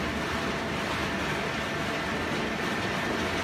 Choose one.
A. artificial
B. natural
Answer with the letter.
B